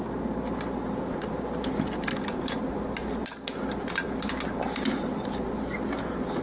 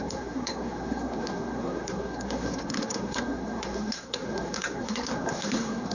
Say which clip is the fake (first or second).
second